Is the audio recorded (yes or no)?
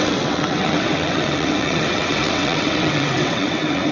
no